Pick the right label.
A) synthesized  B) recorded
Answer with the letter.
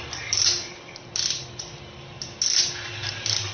B